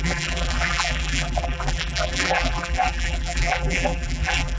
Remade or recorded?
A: remade